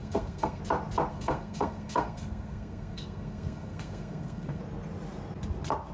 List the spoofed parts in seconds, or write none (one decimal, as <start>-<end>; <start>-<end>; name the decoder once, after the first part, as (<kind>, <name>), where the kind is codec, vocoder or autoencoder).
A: 0.0-0.6 (codec, SNAC); 1.1-4.6